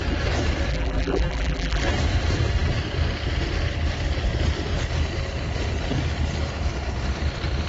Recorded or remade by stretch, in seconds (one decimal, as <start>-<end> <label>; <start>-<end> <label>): 0.0-0.7 recorded; 0.7-1.8 remade; 1.8-7.7 recorded